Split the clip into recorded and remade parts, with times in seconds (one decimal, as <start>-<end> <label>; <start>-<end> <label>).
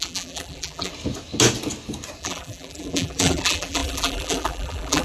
0.0-0.9 remade; 0.9-2.2 recorded; 2.2-5.0 remade